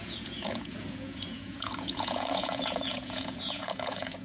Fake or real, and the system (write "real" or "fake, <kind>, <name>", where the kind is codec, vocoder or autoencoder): fake, vocoder, Vocos